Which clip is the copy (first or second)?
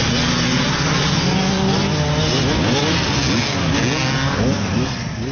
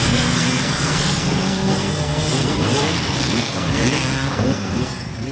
second